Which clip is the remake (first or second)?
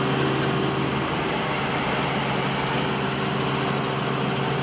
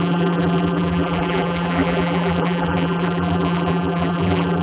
second